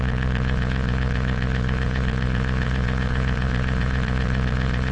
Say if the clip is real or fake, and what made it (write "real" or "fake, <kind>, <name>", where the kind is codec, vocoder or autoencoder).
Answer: fake, vocoder, Vocos